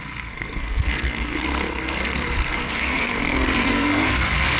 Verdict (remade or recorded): remade